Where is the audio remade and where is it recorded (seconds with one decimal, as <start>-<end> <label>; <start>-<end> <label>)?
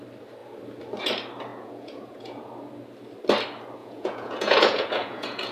0.0-1.5 recorded; 1.5-2.5 remade; 2.5-3.8 recorded; 3.8-5.5 remade